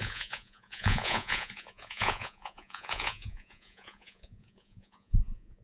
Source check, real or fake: fake